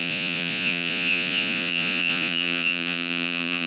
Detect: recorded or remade remade